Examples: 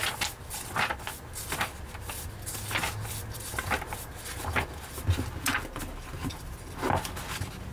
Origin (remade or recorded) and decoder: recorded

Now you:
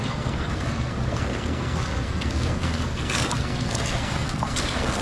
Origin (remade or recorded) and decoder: remade, codec, SNAC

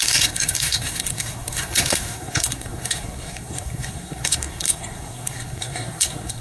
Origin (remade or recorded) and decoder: remade, codec, SNAC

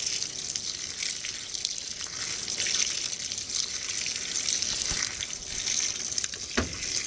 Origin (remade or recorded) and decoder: recorded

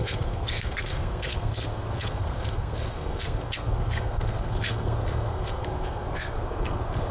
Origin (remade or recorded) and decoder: remade, codec, SNAC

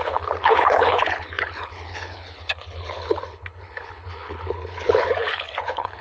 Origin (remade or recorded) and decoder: remade, codec, HILCodec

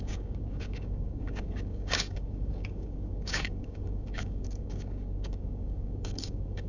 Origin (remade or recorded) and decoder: remade, codec, DAC